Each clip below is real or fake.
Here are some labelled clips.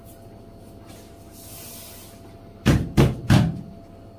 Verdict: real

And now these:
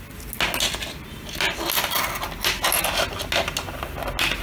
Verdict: real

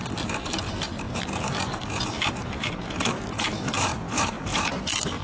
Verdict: fake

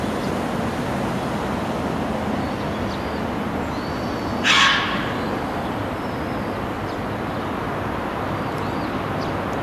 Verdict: real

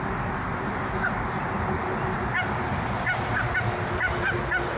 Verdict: real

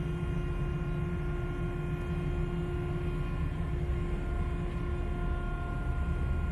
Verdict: real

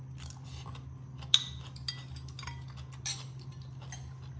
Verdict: real